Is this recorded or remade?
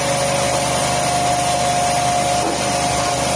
recorded